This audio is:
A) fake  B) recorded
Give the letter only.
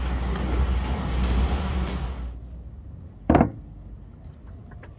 B